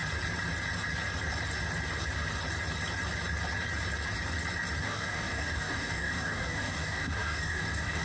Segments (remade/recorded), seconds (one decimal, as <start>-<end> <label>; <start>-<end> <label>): 0.0-4.8 recorded; 4.8-8.0 remade